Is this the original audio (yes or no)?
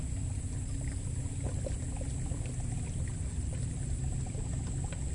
yes